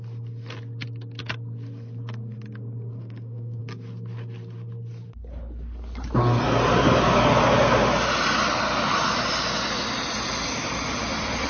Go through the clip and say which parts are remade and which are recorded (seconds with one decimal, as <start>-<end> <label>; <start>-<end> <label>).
0.0-3.0 recorded; 3.0-3.6 remade; 3.6-11.5 recorded